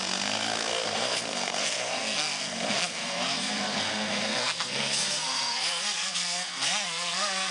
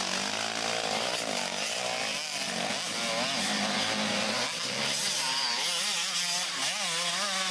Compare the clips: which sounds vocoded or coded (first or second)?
first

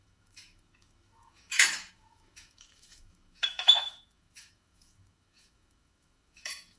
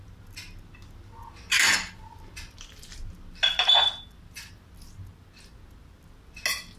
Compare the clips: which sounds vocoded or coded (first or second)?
first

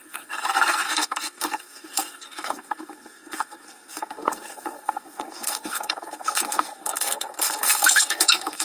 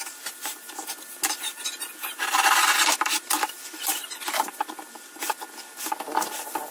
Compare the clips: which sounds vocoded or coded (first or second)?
first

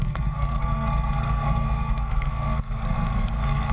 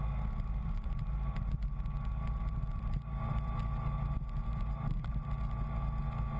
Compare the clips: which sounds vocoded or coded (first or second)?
first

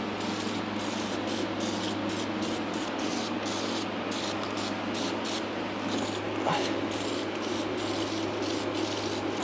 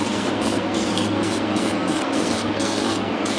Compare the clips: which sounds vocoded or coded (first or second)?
second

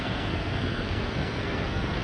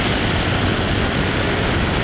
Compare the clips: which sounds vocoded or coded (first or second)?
first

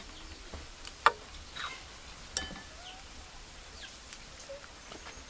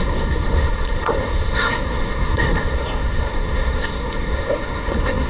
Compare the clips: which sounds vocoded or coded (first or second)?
second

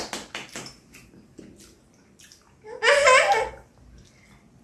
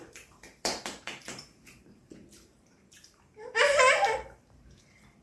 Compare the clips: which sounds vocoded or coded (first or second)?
second